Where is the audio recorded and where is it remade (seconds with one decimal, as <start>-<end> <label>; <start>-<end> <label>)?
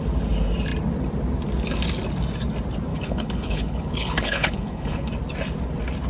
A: 0.0-2.9 recorded; 2.9-5.1 remade; 5.1-6.1 recorded